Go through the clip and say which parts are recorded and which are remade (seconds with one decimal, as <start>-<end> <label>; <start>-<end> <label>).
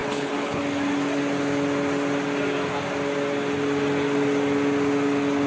0.0-0.6 remade; 0.6-5.5 recorded